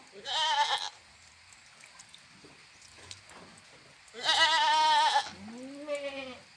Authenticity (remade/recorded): recorded